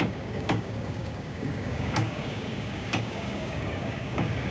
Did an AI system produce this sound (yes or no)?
yes